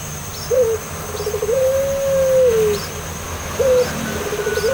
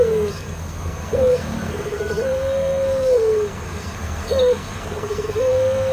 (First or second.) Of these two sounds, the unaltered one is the first